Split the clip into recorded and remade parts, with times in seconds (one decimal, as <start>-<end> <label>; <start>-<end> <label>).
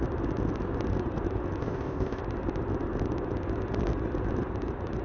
0.0-1.6 recorded; 1.6-2.2 remade; 2.2-5.0 recorded